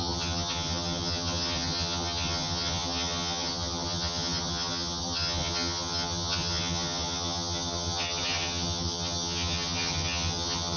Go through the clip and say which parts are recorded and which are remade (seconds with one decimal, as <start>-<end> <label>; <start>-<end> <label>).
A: 0.0-10.8 remade